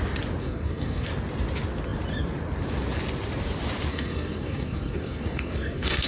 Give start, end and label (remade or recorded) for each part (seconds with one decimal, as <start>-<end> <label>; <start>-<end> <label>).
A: 0.0-0.4 recorded; 0.4-1.1 remade; 1.1-3.9 recorded; 3.9-6.1 remade

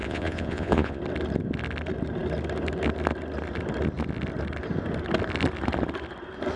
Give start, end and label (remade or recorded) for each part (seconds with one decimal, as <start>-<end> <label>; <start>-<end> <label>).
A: 0.0-1.0 remade; 1.0-6.6 recorded

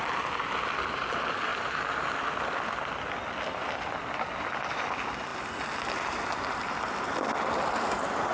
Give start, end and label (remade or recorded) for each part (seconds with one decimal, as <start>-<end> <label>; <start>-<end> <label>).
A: 0.0-8.3 recorded

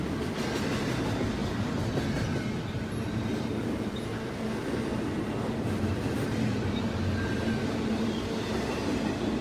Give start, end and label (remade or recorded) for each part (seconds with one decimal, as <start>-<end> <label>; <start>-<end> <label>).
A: 0.0-9.4 recorded

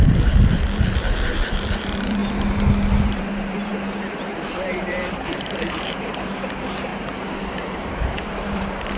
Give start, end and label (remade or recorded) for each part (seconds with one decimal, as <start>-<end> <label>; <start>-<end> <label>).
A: 0.0-2.2 remade; 2.2-3.0 recorded; 3.0-9.0 remade